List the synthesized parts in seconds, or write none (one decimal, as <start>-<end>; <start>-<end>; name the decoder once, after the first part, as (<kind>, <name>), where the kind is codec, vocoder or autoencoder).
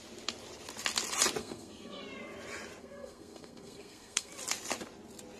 1.4-2.0 (codec, SNAC); 2.8-4.3